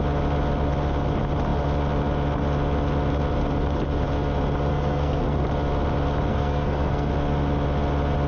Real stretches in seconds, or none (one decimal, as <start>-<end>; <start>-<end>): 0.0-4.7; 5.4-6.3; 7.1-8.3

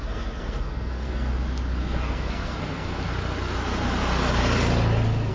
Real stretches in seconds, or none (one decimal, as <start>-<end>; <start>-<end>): 1.3-1.8; 2.9-5.3

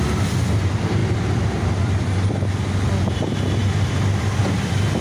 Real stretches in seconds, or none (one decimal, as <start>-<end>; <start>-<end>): 0.0-5.0

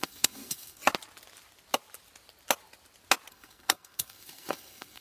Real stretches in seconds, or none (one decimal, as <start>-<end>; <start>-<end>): 0.8-3.3

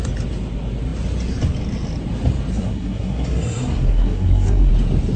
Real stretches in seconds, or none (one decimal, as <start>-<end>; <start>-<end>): 0.0-2.5; 4.7-5.2

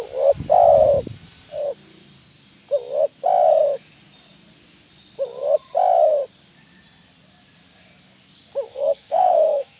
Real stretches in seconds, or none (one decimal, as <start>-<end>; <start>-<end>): 0.0-8.7

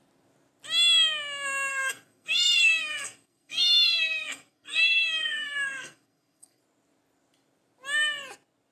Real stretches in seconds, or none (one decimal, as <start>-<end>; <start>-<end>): 0.0-1.7; 6.6-8.7

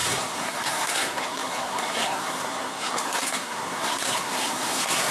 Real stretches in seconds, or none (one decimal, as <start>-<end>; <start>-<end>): none